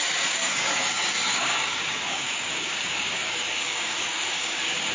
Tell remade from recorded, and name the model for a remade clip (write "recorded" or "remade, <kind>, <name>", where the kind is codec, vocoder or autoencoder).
remade, codec, DAC